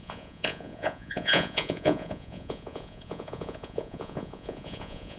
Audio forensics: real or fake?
fake